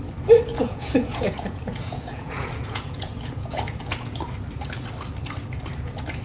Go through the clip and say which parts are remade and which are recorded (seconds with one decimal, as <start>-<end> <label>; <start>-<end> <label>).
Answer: 0.0-0.5 recorded; 0.5-4.2 remade; 4.2-6.2 recorded